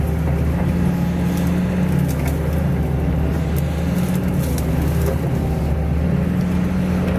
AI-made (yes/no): no